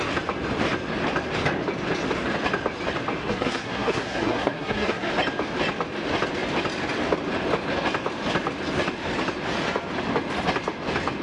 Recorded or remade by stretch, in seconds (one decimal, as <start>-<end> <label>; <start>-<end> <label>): 0.0-3.2 recorded; 3.2-5.1 remade; 5.1-11.2 recorded